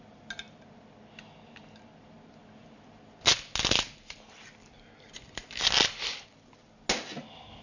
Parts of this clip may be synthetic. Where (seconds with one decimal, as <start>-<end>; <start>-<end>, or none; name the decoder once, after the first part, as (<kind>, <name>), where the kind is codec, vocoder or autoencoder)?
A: none